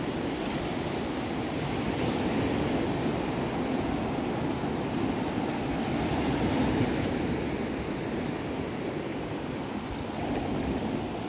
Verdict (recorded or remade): recorded